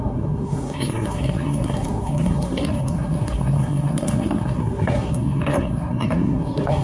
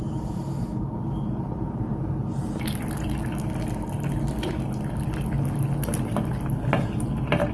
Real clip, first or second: second